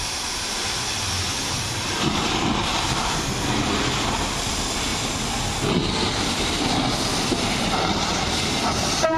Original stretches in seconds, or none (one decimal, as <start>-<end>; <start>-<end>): 4.9-6.2